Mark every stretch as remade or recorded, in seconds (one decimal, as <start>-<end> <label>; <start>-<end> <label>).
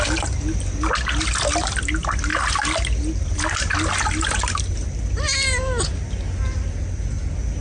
0.0-7.6 recorded